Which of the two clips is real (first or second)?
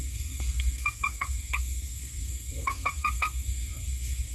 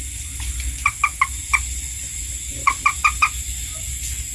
second